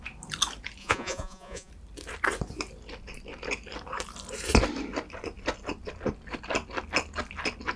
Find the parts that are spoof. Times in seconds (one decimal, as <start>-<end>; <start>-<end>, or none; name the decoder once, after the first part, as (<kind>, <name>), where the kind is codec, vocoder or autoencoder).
0.8-1.7 (vocoder, Vocos)